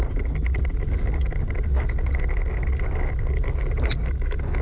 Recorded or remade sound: recorded